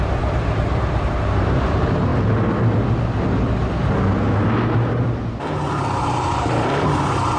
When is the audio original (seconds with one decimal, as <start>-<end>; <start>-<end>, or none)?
2.1-5.4